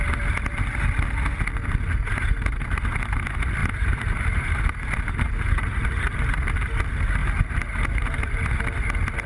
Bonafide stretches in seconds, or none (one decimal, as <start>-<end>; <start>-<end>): 0.0-3.6; 6.0-7.2; 8.5-9.3